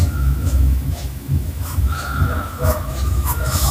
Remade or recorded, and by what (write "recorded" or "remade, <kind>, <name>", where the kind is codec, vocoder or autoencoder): remade, autoencoder, DAC-VAE